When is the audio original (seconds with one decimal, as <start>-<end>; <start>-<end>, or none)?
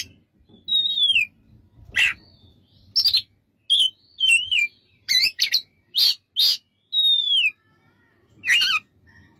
0.0-4.1; 6.3-9.4